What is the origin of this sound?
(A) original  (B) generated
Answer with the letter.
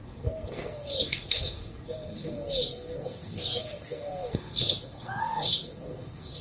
B